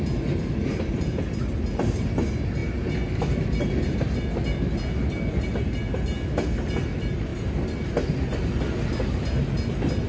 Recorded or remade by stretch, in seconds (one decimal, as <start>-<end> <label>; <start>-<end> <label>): 0.0-10.1 recorded